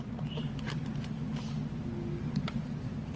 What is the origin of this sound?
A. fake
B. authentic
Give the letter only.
B